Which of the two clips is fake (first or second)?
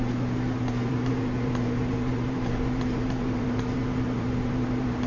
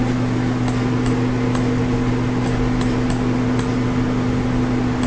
first